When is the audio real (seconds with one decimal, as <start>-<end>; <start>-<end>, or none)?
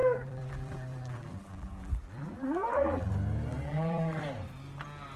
3.1-3.5; 4.2-5.2